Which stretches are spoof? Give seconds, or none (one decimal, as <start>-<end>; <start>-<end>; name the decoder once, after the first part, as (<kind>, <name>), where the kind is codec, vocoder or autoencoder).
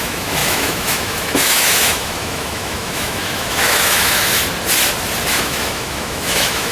0.0-4.4 (autoencoder, DAC-VAE); 5.3-6.7